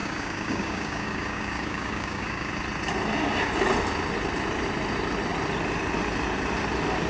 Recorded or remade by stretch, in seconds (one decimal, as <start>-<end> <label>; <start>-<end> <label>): 0.0-2.5 remade; 2.5-7.1 recorded